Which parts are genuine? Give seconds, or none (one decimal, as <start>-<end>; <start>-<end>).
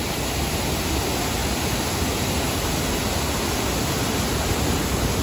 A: 0.0-5.2